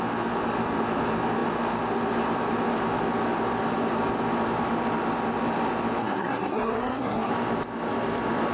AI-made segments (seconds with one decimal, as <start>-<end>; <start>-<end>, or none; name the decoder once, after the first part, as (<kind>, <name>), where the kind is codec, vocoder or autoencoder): 6.0-7.3 (codec, SNAC)